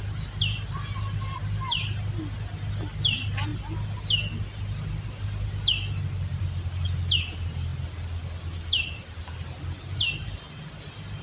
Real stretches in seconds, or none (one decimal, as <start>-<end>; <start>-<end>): 0.0-11.2